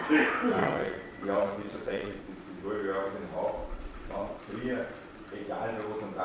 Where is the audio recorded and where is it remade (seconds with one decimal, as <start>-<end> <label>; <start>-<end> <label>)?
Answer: 0.0-0.6 recorded; 0.6-2.2 remade; 2.2-3.6 recorded; 3.6-4.4 remade; 4.4-6.2 recorded